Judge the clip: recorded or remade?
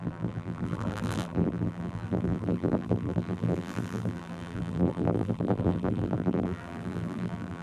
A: remade